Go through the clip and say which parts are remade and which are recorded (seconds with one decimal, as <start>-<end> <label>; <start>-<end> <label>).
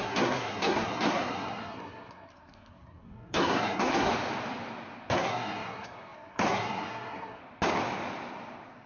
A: 0.0-4.1 remade; 4.1-5.1 recorded; 5.1-7.4 remade; 7.4-8.9 recorded